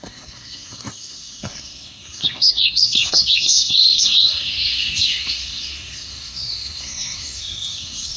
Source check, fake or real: fake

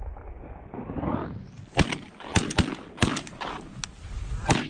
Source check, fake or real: real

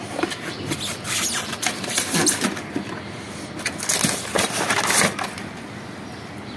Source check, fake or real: real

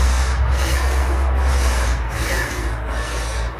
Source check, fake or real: fake